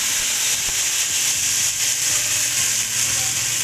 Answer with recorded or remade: recorded